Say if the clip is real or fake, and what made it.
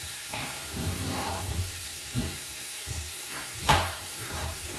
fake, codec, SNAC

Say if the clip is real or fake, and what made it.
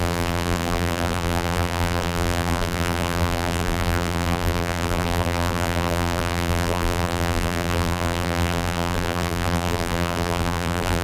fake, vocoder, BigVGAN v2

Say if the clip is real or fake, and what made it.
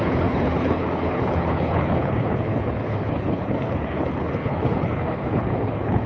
fake, codec, HILCodec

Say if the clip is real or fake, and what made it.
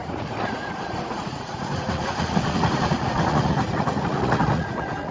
fake, vocoder, Vocos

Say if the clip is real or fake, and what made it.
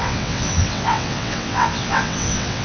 fake, vocoder, WaveNeXt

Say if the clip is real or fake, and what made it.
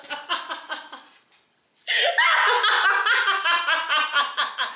real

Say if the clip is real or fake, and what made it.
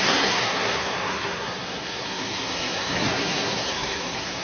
fake, codec, SNAC